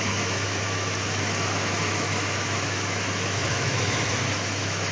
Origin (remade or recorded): remade